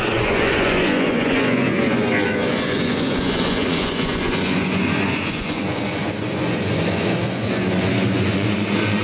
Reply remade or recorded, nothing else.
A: remade